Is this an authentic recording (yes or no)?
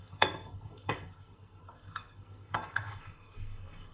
no